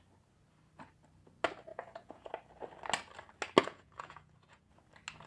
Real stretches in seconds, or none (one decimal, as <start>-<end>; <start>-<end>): 0.0-1.7; 2.3-3.6; 4.7-5.3